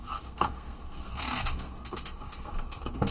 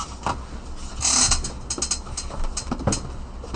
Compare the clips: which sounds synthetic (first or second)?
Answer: first